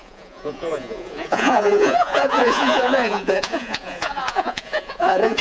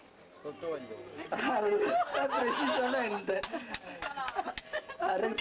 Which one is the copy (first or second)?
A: first